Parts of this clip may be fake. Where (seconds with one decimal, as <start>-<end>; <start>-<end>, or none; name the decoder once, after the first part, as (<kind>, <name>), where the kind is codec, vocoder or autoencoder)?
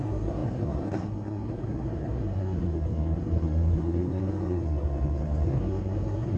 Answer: 0.0-6.4 (codec, SNAC)